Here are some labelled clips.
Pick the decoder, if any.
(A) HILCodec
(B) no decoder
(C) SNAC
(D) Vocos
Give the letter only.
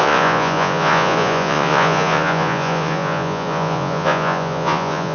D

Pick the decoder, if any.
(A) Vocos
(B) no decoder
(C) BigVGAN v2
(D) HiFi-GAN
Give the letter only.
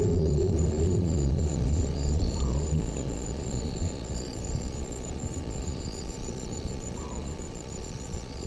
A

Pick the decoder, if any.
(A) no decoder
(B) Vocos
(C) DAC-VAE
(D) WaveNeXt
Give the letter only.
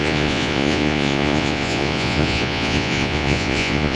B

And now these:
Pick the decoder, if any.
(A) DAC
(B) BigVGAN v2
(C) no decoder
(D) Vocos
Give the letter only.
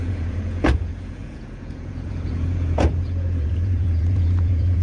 D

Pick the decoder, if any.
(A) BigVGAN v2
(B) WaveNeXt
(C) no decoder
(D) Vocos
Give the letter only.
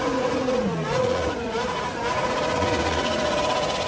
D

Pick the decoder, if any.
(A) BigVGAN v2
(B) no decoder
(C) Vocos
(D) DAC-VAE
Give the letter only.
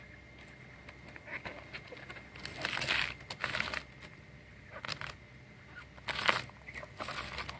B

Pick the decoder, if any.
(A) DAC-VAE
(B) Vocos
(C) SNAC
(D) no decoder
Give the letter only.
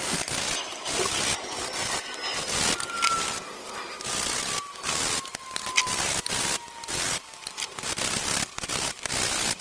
D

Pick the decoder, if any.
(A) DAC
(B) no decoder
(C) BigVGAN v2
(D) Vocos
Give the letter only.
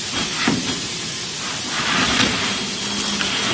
B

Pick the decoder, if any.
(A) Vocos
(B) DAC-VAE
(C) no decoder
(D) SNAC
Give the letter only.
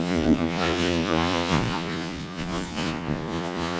A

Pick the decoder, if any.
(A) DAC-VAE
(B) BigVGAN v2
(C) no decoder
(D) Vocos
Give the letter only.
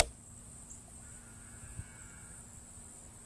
C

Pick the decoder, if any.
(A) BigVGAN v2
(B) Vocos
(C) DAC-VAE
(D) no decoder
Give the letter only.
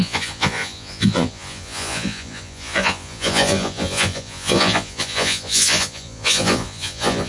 B